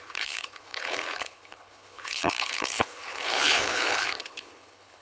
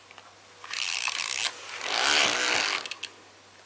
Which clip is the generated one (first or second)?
first